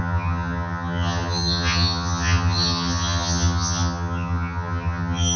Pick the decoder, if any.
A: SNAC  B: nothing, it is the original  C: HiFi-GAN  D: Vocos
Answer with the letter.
C